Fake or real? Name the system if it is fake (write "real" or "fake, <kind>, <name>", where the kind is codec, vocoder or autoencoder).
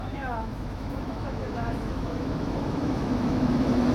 fake, autoencoder, DAC-VAE